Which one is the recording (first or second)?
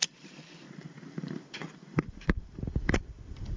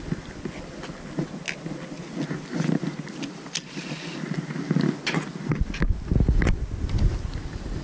second